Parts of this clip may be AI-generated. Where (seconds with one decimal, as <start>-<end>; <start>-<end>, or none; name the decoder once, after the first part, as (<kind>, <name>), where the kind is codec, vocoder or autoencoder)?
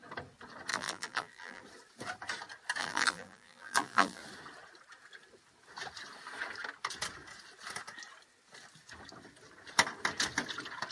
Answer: 0.7-1.6 (vocoder, BigVGAN v2); 2.8-4.2